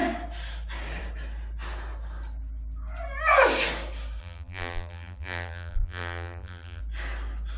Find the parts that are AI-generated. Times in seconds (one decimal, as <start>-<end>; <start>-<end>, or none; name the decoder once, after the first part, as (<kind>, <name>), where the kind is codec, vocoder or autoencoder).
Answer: 4.2-6.8 (vocoder, BigVGAN v2)